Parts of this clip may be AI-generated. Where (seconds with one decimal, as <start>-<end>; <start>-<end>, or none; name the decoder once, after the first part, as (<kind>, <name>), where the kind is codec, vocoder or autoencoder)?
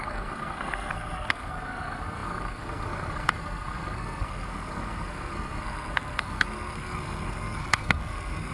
0.0-8.5 (codec, SNAC)